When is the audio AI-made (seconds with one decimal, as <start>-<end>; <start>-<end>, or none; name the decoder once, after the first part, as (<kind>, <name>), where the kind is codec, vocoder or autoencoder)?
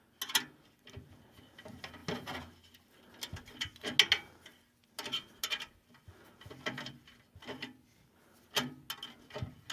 none